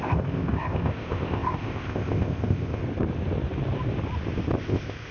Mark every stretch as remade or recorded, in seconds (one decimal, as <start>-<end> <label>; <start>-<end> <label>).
0.0-2.8 remade; 2.8-4.6 recorded; 4.6-5.1 remade